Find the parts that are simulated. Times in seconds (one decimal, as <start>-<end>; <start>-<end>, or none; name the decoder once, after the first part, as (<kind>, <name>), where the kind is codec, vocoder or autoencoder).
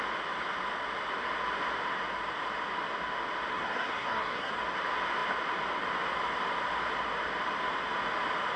3.5-4.5 (codec, SNAC)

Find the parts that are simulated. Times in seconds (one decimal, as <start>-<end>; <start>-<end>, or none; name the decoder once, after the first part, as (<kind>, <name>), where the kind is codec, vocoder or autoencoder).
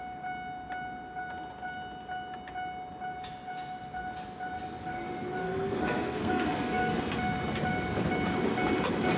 5.4-7.0 (codec, SNAC)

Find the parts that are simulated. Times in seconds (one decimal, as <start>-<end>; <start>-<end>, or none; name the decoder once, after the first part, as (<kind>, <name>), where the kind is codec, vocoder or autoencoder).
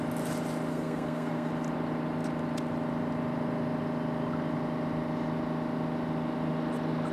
0.7-1.5 (codec, SNAC)